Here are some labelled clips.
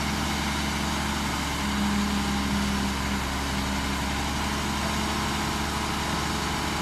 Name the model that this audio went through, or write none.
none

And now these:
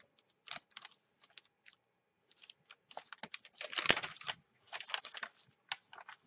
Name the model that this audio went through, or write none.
none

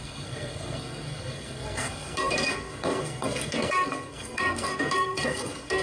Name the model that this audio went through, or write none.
codec, SNAC